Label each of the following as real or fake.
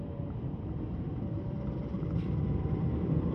fake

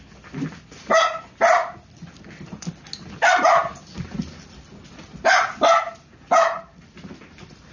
real